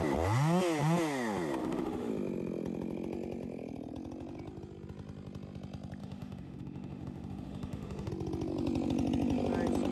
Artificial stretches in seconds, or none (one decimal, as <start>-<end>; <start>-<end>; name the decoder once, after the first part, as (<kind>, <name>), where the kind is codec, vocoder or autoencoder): 1.6-2.1 (autoencoder, DAC-VAE); 6.0-8.1

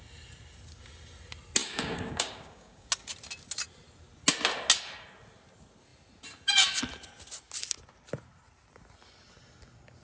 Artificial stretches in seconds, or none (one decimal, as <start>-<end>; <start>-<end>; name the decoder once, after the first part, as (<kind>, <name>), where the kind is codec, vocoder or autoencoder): 1.6-2.9 (codec, DAC)